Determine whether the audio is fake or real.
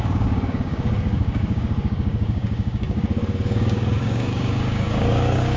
fake